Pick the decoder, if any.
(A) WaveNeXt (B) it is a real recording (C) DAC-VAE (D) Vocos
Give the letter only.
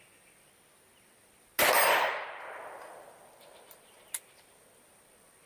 B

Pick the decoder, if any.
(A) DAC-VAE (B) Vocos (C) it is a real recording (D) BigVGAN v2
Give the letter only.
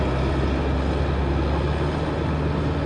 C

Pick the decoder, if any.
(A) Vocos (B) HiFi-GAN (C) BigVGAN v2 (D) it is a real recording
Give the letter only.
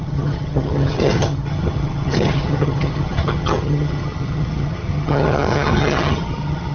B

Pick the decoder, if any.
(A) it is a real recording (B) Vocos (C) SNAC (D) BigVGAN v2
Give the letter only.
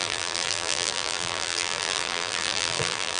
D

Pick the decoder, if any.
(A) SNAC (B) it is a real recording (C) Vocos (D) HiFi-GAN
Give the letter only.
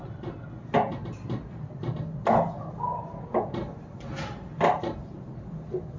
B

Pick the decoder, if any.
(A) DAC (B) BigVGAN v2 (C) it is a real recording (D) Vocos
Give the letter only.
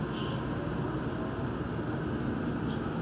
C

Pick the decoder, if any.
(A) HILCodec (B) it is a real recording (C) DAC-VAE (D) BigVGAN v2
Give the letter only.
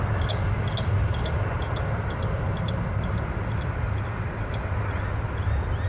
B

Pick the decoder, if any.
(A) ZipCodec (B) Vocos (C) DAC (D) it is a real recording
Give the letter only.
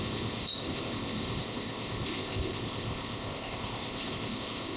A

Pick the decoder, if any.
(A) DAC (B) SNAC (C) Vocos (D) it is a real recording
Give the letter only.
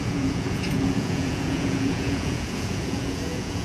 C